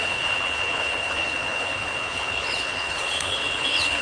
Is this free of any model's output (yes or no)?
no